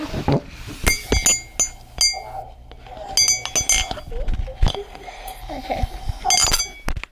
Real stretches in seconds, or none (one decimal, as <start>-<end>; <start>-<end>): 0.0-4.7; 5.4-7.1